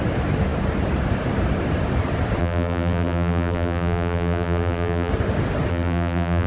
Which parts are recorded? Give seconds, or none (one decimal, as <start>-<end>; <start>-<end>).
0.0-2.4; 5.1-5.7